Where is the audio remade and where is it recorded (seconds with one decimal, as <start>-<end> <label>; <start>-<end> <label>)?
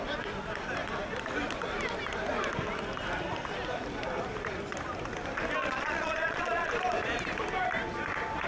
0.0-5.6 recorded; 5.6-6.7 remade; 6.7-8.5 recorded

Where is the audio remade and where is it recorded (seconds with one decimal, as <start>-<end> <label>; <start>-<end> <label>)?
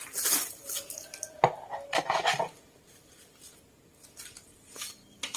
0.0-5.4 recorded